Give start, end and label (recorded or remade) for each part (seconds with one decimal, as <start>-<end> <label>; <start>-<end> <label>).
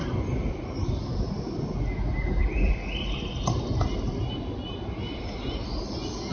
0.0-2.4 recorded; 2.4-4.1 remade; 4.1-6.3 recorded